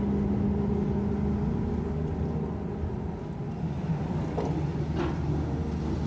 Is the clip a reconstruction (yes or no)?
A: no